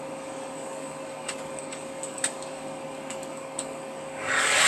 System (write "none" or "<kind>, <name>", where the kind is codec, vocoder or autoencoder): codec, DAC